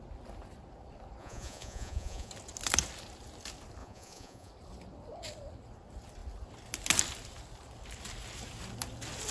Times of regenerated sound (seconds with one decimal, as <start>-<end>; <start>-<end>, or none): 1.2-2.3; 3.8-4.5